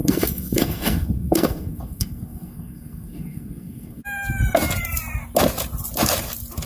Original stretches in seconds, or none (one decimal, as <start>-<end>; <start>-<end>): 4.0-6.7